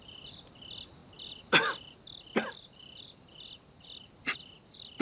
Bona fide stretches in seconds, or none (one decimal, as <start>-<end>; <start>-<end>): 0.0-5.0